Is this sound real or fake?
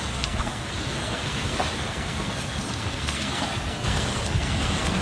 fake